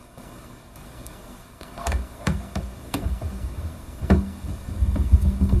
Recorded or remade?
remade